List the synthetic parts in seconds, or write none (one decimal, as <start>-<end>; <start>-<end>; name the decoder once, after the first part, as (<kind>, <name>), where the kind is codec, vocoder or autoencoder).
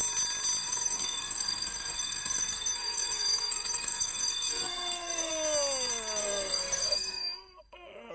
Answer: 0.6-5.3 (codec, SNAC); 6.2-8.1